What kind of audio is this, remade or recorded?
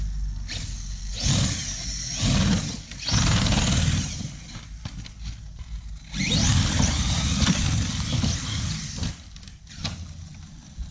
recorded